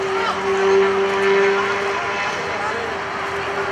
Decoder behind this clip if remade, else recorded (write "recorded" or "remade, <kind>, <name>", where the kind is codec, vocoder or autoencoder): recorded